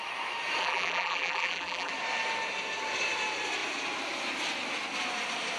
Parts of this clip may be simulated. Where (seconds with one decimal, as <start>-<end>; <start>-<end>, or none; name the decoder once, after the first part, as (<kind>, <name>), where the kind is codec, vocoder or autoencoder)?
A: 0.6-1.9 (vocoder, BigVGAN v2)